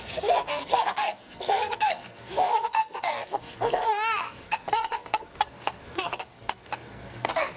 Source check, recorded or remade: remade